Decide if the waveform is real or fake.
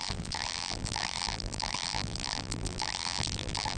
fake